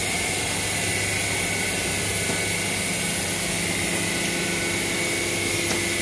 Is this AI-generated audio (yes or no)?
no